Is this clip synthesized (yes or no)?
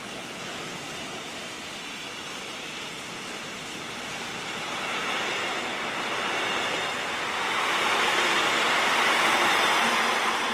no